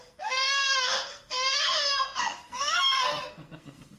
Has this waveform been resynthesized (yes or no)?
yes